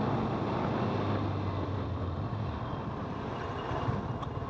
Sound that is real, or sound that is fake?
real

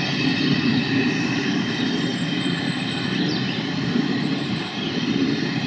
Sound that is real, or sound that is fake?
fake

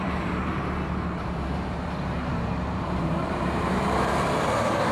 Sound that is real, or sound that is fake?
fake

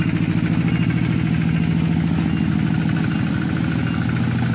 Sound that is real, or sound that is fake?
real